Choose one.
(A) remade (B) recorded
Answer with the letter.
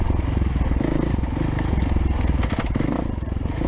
B